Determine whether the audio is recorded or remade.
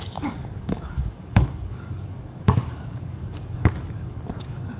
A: remade